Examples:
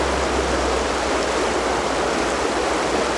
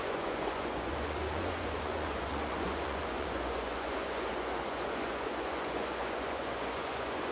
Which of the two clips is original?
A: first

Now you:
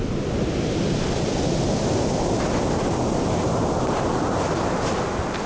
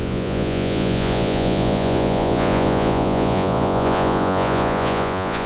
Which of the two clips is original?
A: first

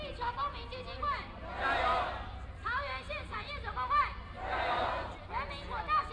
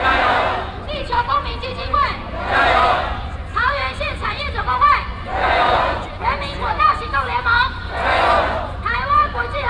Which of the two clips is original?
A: first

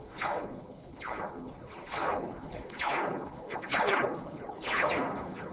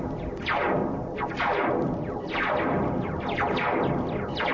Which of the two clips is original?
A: second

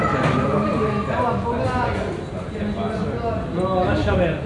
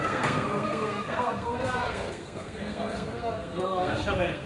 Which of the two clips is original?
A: first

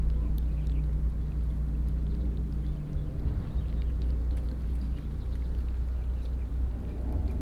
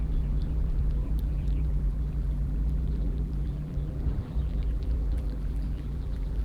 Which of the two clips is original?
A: first